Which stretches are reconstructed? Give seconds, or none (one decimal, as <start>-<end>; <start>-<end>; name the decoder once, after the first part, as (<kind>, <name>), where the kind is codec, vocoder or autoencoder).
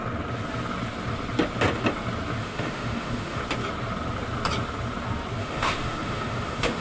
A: 2.4-3.4 (autoencoder, DAC-VAE); 5.4-6.8